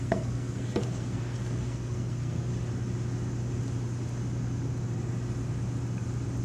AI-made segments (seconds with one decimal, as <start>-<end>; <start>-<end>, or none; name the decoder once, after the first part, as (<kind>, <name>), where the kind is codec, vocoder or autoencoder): 0.0-2.5 (codec, SNAC)